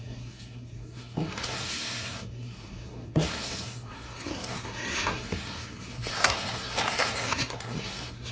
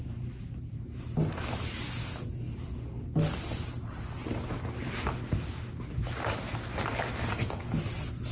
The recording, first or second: second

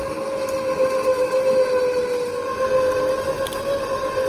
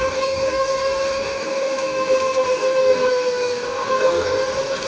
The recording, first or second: first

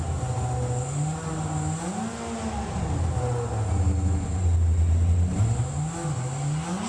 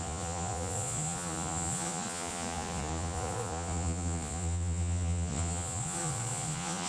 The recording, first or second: first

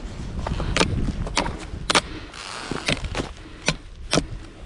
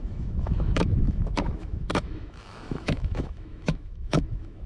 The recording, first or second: first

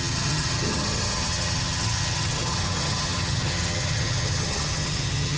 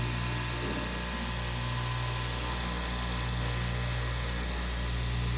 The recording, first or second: second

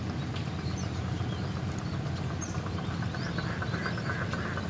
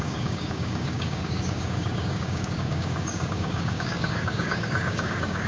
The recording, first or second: first